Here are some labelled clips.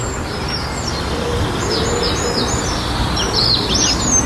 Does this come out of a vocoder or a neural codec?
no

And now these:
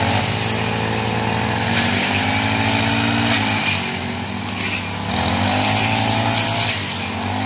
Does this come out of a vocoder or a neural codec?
no